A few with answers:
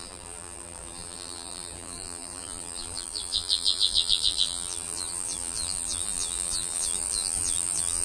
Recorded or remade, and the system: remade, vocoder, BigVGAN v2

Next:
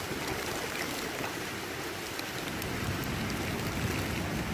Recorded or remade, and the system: recorded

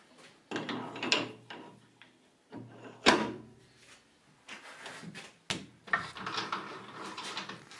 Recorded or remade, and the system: recorded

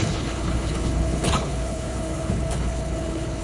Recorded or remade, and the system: remade, codec, HILCodec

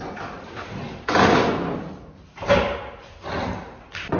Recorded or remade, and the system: recorded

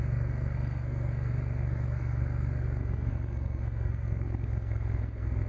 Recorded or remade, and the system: remade, codec, SNAC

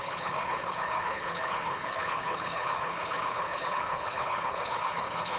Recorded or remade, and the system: remade, codec, HILCodec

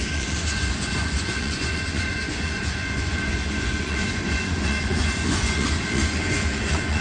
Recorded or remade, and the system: remade, vocoder, Vocos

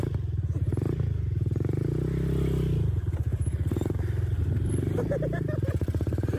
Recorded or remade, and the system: recorded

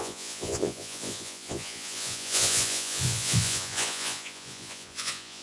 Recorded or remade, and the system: remade, vocoder, Vocos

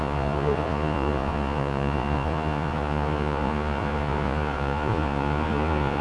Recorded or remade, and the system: remade, vocoder, Vocos